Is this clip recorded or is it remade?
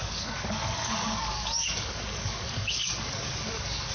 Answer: remade